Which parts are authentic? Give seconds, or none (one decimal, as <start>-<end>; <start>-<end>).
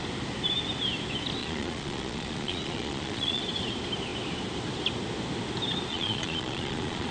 0.0-1.4; 3.4-5.9